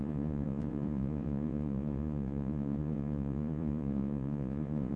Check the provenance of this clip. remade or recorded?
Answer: remade